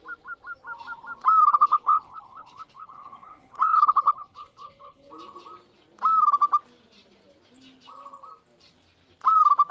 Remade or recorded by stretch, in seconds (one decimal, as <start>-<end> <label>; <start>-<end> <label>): 0.0-1.5 recorded; 1.5-5.1 remade; 5.1-9.7 recorded